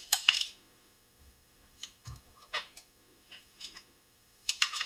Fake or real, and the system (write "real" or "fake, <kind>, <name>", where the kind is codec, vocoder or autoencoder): fake, autoencoder, DAC-VAE